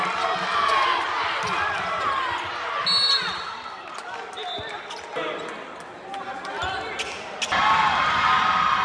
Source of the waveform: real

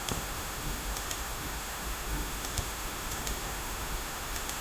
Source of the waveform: fake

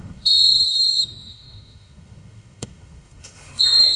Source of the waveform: fake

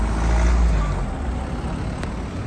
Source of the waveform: real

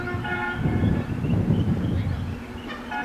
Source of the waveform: real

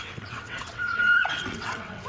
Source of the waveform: fake